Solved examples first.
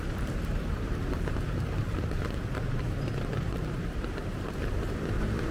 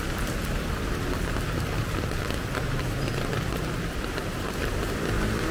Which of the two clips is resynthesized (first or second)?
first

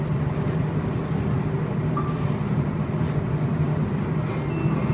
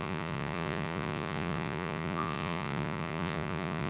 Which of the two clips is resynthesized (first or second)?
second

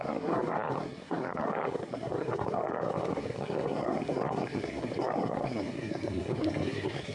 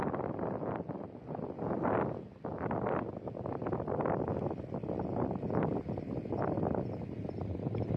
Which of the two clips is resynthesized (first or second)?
first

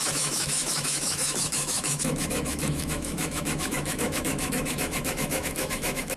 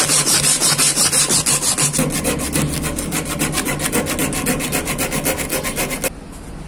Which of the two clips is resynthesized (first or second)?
first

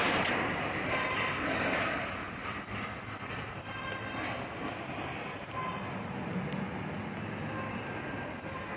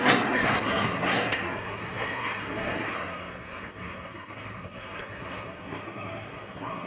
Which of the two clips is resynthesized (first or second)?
second